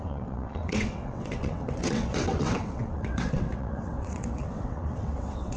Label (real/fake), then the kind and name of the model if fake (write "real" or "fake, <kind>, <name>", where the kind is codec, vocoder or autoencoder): fake, vocoder, WaveNeXt